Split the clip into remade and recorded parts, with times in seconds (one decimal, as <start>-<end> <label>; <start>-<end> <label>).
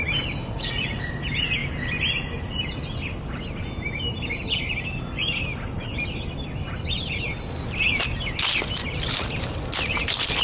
0.0-0.4 recorded; 0.4-1.0 remade; 1.0-10.4 recorded